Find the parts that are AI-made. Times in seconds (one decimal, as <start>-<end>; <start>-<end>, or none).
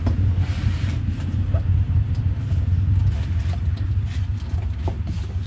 none